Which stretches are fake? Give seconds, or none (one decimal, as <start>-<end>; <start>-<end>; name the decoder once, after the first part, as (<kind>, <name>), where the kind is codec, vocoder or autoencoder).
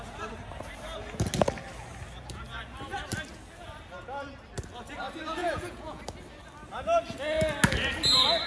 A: 5.4-6.0 (vocoder, Vocos)